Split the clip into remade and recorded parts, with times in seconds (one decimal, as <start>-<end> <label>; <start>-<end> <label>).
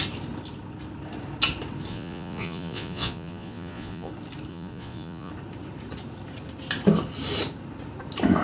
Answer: 0.0-1.9 recorded; 1.9-4.1 remade; 4.1-4.5 recorded; 4.5-5.3 remade; 5.3-8.4 recorded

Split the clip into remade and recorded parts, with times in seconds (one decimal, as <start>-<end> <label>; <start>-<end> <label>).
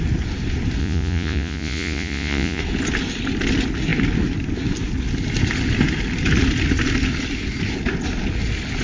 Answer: 0.0-0.8 recorded; 0.8-2.6 remade; 2.6-8.8 recorded